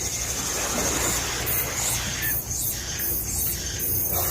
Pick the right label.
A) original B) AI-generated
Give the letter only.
A